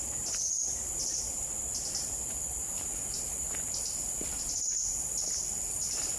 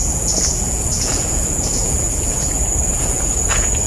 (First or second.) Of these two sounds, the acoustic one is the first